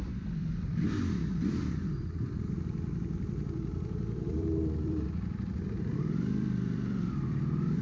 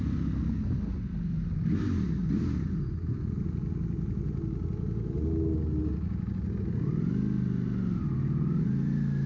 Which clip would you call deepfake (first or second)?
first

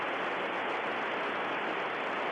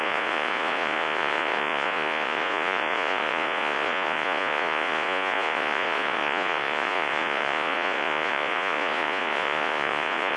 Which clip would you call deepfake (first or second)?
second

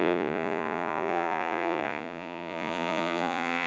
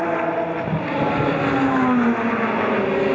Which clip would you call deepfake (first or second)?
first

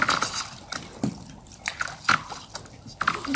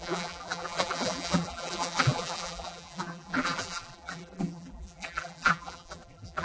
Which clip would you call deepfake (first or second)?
second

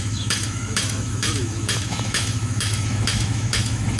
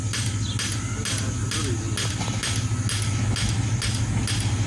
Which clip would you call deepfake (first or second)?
first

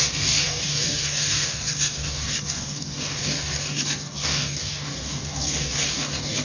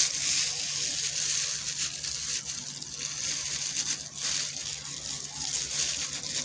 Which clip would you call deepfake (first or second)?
first